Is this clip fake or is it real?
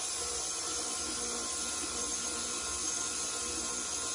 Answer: real